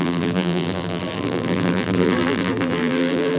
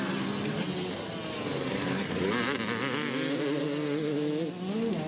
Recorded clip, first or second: second